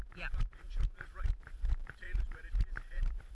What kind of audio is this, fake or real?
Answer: fake